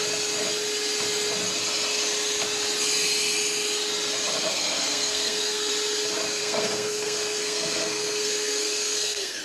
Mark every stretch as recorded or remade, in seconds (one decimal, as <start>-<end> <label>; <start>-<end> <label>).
0.0-4.5 recorded; 4.5-5.7 remade; 5.7-6.4 recorded; 6.4-9.4 remade